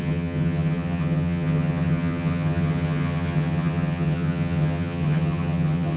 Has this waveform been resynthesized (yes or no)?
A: yes